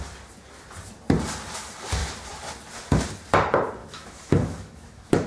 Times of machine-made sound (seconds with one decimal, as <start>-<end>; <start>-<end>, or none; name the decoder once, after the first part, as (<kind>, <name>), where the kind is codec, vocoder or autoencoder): 3.8-5.3 (autoencoder, DAC-VAE)